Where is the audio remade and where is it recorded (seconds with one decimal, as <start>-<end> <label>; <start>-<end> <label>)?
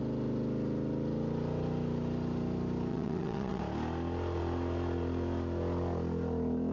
0.0-2.9 recorded; 2.9-3.6 remade; 3.6-6.7 recorded